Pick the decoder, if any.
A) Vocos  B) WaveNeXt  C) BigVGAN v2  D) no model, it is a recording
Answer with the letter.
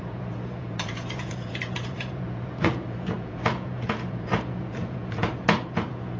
A